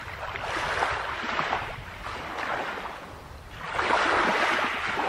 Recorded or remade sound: recorded